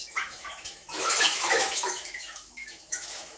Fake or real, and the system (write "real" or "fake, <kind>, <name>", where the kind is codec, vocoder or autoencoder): fake, autoencoder, DAC-VAE